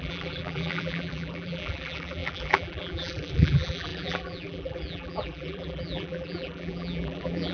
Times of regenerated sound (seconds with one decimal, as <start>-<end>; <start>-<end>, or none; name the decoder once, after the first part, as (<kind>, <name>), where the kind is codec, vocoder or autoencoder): 0.0-7.5 (vocoder, BigVGAN v2)